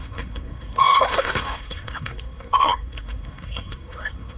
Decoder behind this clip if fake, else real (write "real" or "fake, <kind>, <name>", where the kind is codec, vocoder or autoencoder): fake, codec, SNAC